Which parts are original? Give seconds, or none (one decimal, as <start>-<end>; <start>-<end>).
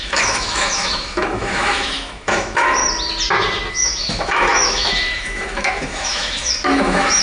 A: 2.8-3.7